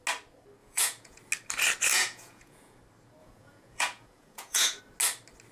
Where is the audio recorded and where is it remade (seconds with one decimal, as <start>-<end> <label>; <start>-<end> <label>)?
0.0-0.6 recorded; 0.6-1.2 remade; 1.2-1.9 recorded; 1.9-2.8 remade; 2.8-3.2 recorded; 3.2-4.8 remade; 4.8-5.5 recorded